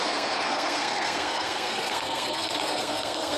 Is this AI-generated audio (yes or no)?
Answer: yes